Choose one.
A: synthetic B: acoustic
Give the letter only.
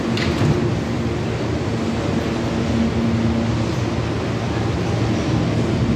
B